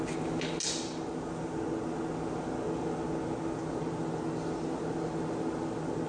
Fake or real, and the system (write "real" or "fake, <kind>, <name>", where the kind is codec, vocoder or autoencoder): real